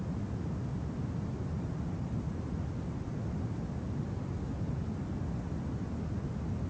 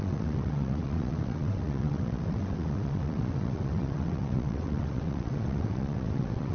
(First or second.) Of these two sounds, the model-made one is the second